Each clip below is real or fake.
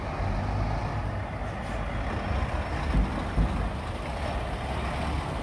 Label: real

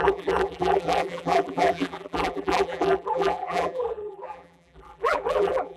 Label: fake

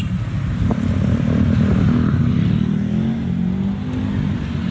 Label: real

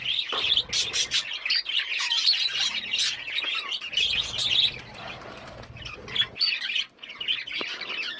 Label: fake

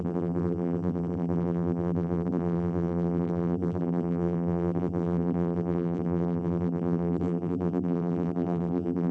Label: fake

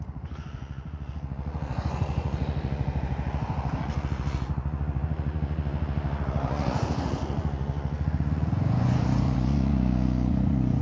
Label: fake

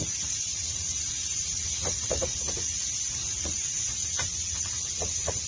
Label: fake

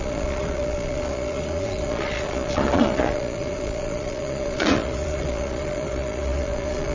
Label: fake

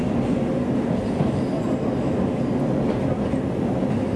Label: real